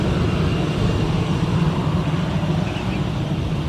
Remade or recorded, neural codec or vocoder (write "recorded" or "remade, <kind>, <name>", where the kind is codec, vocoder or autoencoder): recorded